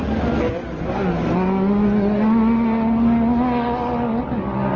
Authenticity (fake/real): real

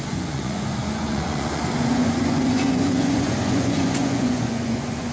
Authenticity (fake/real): fake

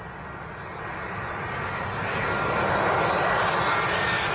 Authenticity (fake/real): real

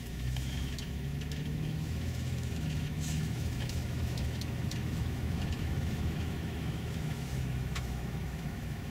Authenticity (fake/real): fake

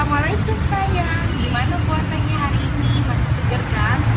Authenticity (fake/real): real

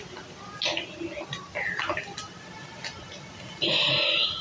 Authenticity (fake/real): real